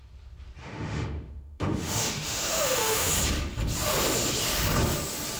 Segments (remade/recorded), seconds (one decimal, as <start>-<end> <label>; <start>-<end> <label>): 0.0-0.6 recorded; 0.6-3.1 remade; 3.1-5.4 recorded